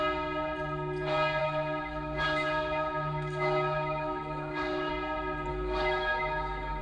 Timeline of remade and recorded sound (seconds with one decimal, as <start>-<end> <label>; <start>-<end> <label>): 0.0-1.4 recorded; 1.4-4.9 remade; 4.9-5.5 recorded; 5.5-6.8 remade